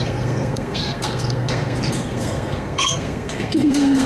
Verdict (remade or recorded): remade